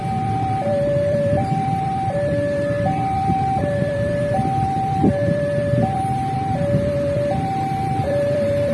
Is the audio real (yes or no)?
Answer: no